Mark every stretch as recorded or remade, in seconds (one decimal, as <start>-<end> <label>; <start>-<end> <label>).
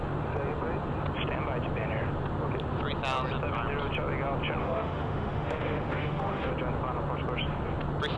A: 0.0-4.6 recorded; 4.6-6.5 remade; 6.5-8.2 recorded